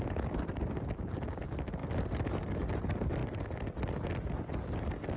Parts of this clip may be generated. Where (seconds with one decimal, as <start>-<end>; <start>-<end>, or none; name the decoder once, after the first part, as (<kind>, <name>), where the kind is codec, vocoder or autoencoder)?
none